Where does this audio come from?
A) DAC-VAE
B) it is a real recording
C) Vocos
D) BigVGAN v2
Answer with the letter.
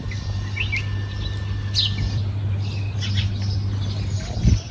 B